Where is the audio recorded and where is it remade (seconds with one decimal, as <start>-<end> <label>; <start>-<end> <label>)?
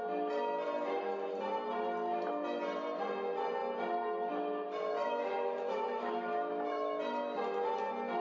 0.0-4.9 recorded; 4.9-7.0 remade; 7.0-8.2 recorded